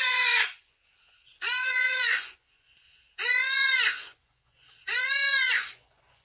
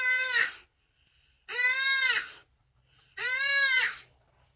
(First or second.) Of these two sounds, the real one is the second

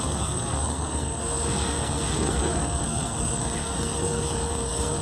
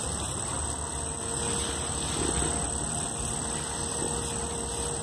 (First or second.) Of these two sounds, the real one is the second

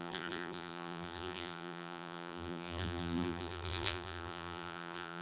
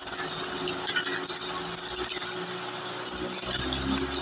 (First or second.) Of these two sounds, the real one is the second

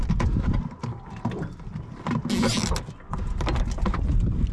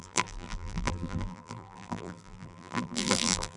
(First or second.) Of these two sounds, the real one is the first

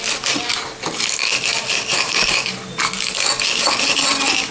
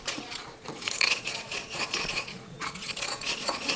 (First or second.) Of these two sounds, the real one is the first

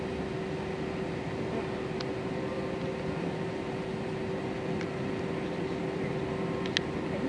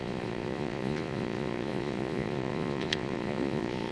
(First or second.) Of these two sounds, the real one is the first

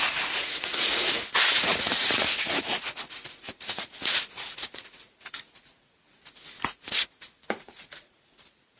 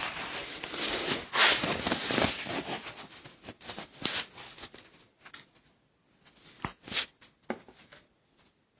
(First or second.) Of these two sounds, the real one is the second